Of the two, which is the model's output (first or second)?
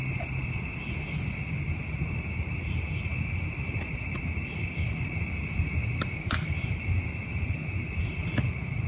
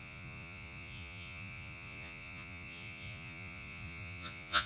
second